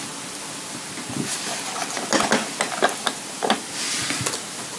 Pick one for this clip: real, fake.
real